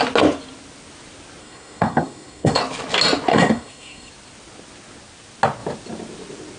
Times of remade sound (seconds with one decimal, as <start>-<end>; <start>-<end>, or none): 1.4-2.6; 3.3-4.1